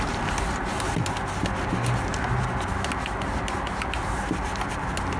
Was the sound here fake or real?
real